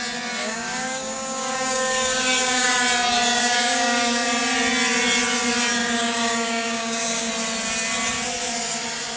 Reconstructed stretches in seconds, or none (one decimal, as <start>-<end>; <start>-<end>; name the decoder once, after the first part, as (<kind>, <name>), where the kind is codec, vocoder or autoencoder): 0.4-2.7 (codec, DAC); 3.4-4.3; 5.8-7.3